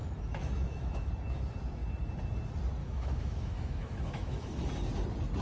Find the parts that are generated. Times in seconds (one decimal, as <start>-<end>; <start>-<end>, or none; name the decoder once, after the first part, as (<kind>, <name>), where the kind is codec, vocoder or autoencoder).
0.0-1.1 (autoencoder, DAC-VAE); 2.8-4.7